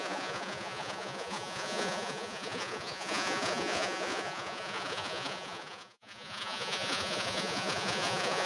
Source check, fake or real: fake